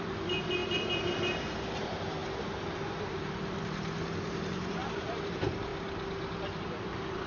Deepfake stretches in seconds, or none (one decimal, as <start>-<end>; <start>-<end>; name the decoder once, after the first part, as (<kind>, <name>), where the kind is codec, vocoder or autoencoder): 0.0-0.6 (vocoder, BigVGAN v2); 1.8-2.2; 3.6-5.7